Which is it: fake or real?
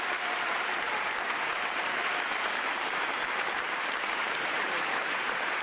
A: fake